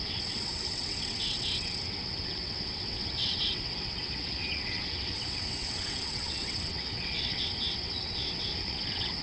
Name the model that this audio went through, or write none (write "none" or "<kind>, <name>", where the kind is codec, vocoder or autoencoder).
vocoder, WaveNeXt